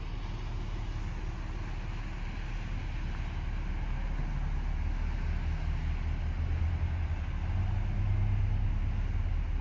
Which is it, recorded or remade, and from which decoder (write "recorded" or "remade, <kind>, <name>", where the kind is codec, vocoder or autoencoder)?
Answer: recorded